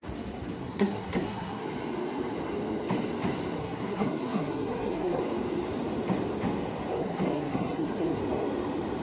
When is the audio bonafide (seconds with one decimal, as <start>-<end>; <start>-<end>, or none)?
0.0-0.6; 1.6-3.6; 5.2-7.0; 8.2-9.0